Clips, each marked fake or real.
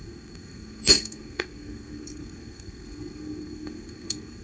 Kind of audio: fake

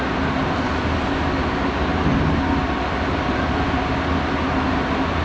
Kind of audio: real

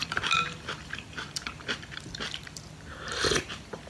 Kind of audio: fake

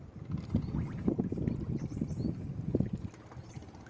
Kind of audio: real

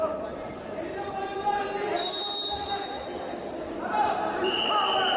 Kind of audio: real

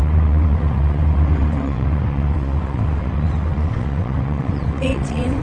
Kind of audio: fake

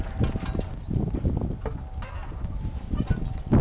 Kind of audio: real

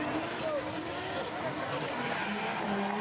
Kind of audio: real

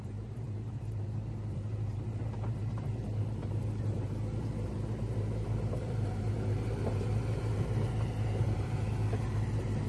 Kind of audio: fake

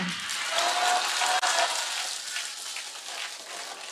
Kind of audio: real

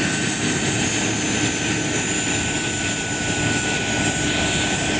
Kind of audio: real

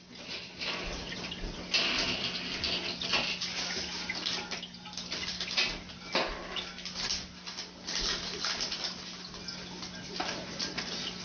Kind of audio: real